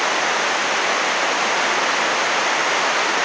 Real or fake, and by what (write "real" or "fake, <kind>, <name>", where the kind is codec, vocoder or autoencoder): real